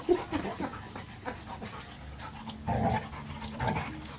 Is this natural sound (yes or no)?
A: yes